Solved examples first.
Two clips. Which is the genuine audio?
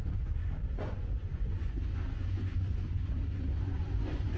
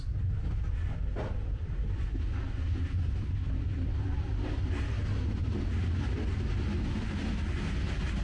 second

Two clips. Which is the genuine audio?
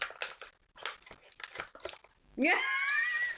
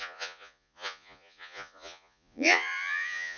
first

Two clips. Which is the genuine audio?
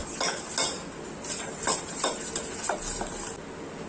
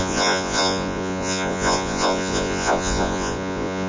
first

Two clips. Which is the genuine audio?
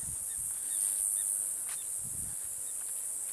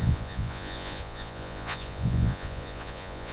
first